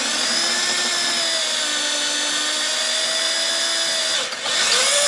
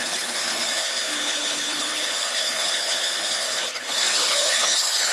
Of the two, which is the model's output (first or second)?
second